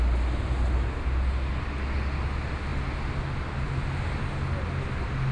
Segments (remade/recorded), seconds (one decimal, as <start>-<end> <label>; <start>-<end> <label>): 0.0-5.3 recorded